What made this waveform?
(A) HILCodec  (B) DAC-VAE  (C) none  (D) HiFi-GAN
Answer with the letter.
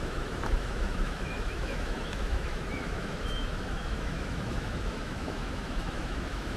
B